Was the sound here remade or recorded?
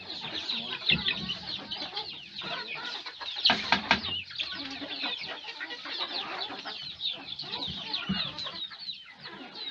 recorded